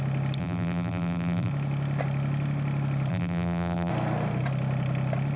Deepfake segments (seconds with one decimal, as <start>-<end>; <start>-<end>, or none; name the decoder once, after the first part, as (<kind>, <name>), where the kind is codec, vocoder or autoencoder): 0.4-1.5 (vocoder, BigVGAN v2); 3.1-3.9